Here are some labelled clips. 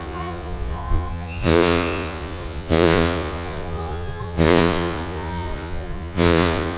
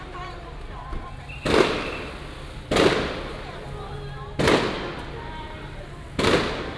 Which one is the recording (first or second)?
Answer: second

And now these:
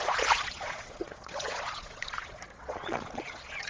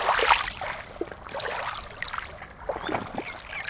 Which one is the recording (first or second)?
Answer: second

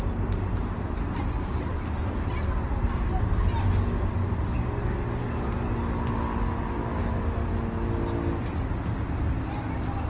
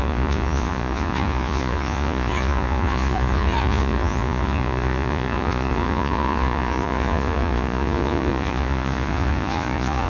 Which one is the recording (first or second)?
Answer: first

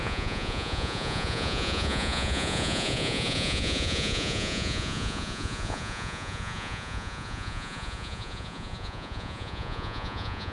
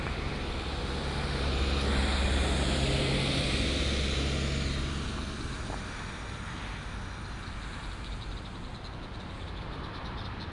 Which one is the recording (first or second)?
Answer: second